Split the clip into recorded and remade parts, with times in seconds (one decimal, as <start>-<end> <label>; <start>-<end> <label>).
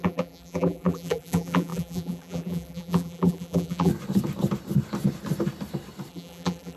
0.0-3.9 remade; 3.9-6.1 recorded; 6.1-6.8 remade